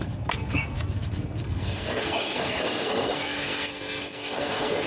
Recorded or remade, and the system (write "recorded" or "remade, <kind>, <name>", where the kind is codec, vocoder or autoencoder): remade, codec, SNAC